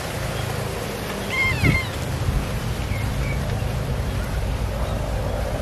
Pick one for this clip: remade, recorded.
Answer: recorded